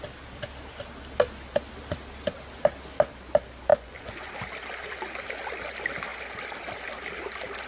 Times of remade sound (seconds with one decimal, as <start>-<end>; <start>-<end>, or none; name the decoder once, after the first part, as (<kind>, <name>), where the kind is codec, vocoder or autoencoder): 3.7-4.3 (vocoder, Vocos)